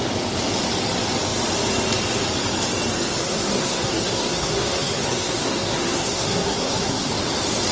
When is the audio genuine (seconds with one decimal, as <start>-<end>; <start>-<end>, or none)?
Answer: 0.0-3.2; 7.1-7.7